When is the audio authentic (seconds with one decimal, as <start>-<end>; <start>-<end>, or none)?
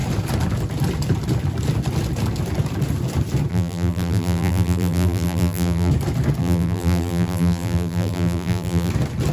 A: 0.0-3.5; 5.9-6.4; 8.9-9.3